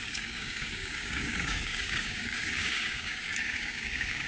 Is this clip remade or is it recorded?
remade